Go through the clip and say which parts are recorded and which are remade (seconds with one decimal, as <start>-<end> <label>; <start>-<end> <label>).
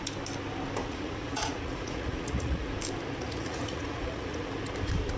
0.0-0.8 recorded; 0.8-2.7 remade; 2.7-3.2 recorded; 3.2-4.5 remade; 4.5-5.2 recorded